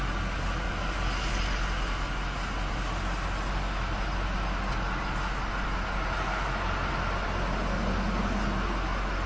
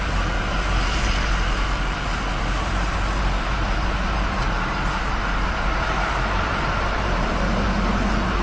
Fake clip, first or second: second